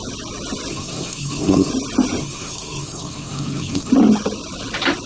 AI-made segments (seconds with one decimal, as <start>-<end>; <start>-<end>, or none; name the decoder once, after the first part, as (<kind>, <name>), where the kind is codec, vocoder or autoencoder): 0.7-1.7 (codec, SNAC); 2.2-3.9